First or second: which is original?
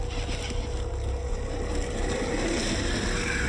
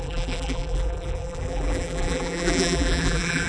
first